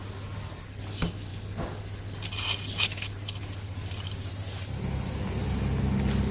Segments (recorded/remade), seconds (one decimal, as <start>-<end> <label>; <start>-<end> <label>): 0.0-6.3 recorded